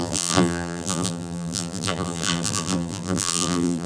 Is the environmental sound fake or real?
fake